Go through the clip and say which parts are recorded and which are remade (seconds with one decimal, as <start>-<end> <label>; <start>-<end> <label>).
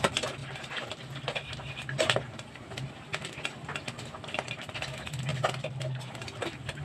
0.0-6.8 recorded